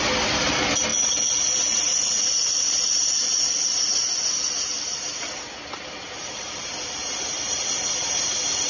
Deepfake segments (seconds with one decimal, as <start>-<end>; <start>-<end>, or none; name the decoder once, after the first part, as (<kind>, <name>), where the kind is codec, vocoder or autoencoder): none